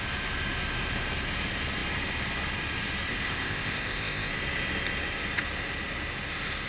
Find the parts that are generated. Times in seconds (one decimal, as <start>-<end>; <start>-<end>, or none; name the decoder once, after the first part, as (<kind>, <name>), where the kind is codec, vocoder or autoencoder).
3.1-4.3 (codec, ZipCodec)